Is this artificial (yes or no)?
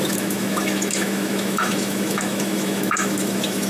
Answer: yes